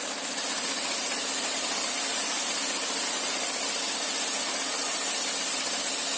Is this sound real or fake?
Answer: real